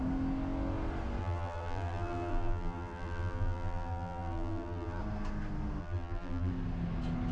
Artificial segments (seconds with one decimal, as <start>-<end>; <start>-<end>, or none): 1.2-5.0; 5.8-6.5